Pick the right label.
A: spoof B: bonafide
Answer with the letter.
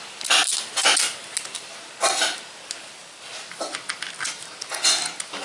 B